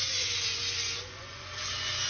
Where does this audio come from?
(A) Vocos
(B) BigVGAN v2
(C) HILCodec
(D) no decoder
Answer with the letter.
A